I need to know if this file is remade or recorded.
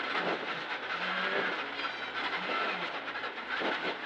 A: recorded